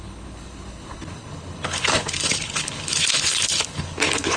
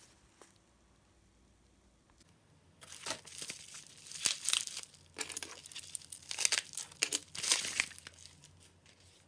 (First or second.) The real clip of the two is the second